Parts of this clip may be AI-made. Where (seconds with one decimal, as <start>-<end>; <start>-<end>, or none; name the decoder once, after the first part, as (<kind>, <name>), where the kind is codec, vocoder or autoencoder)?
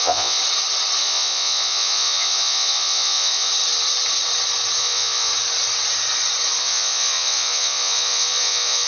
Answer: 0.0-0.4 (vocoder, Vocos); 1.0-3.5; 4.8-5.3; 6.6-8.9